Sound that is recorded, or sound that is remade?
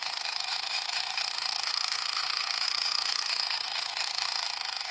remade